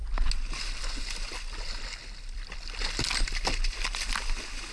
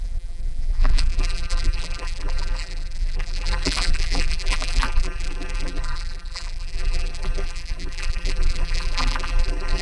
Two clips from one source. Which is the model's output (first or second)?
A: second